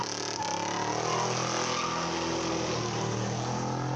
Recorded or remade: recorded